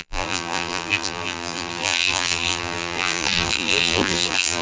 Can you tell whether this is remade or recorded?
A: remade